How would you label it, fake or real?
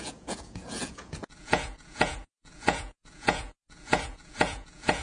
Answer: fake